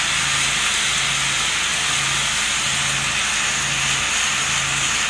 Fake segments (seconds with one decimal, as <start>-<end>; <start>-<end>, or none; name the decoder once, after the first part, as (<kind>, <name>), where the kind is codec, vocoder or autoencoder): none